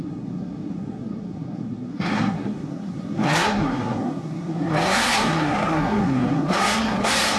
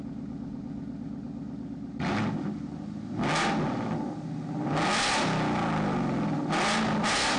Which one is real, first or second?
second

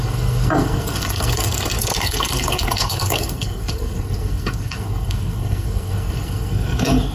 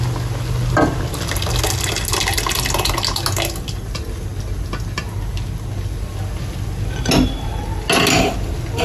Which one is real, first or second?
second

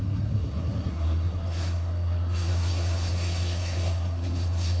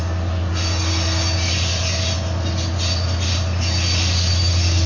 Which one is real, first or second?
second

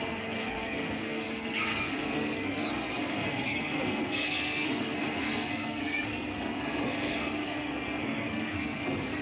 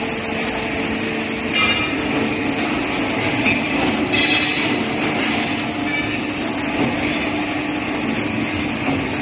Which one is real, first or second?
second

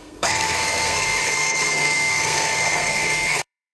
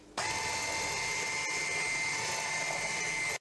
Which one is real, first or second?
second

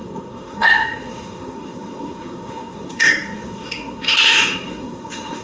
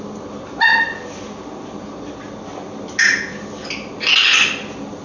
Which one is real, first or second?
second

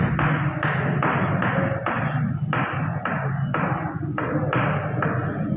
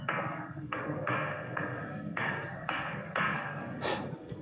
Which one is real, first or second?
first